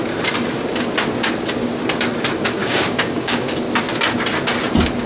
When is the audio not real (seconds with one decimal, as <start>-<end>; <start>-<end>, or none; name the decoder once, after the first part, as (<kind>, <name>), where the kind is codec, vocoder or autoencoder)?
2.6-3.5 (codec, DAC)